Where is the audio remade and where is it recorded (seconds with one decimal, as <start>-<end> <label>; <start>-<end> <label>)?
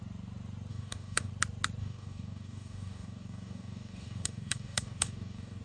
0.0-0.7 recorded; 0.7-1.3 remade; 1.3-1.8 recorded; 1.8-5.6 remade